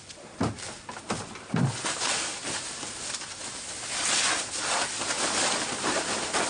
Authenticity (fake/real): real